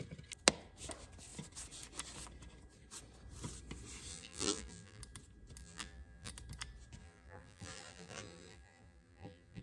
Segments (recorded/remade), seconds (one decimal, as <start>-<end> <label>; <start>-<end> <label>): 0.0-4.1 recorded; 4.1-5.0 remade; 5.0-5.6 recorded; 5.6-6.3 remade; 6.3-7.0 recorded; 7.0-9.6 remade